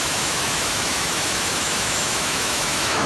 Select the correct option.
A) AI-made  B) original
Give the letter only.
A